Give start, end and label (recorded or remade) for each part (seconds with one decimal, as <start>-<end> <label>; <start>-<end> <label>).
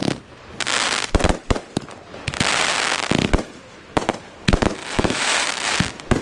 0.0-4.8 recorded; 4.8-5.7 remade; 5.7-6.2 recorded